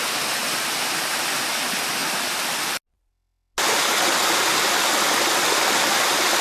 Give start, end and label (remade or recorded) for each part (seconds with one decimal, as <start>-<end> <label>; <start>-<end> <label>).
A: 0.0-6.4 recorded